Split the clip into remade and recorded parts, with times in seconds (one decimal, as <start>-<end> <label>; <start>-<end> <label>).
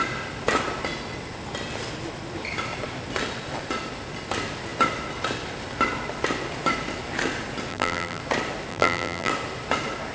0.0-7.7 recorded; 7.7-8.2 remade; 8.2-8.7 recorded; 8.7-9.3 remade; 9.3-10.1 recorded